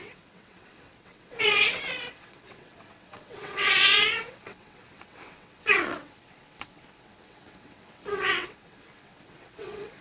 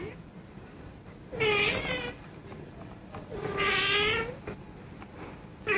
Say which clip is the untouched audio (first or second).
second